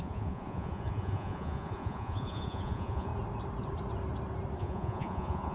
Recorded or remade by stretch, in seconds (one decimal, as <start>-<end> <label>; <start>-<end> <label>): 0.0-3.1 remade; 3.1-4.6 recorded; 4.6-5.5 remade